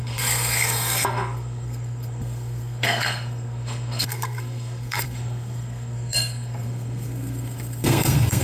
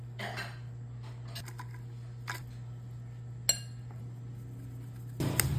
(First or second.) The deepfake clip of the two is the first